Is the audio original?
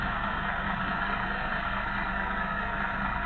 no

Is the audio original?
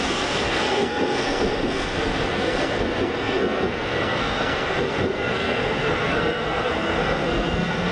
no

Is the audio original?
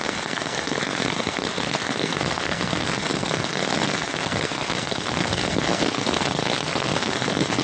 no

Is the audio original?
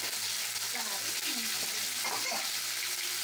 yes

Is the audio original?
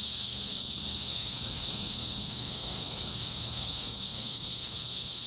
no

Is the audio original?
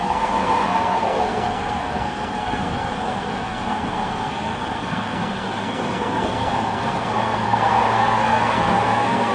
no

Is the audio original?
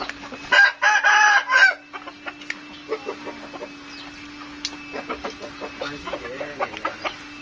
yes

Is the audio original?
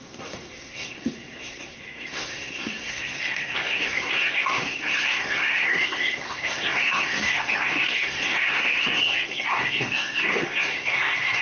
no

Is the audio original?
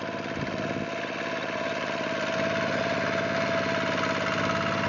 yes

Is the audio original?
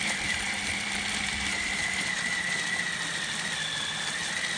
yes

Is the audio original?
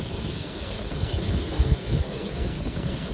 no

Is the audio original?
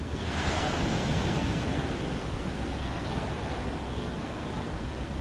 no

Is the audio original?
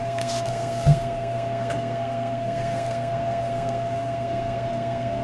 no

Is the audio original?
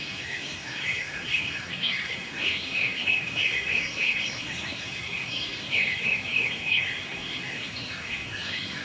no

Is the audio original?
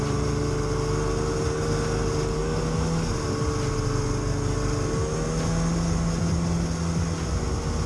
yes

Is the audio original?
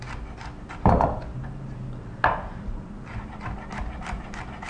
yes